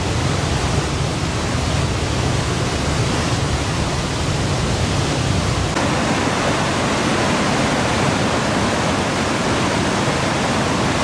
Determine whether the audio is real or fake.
real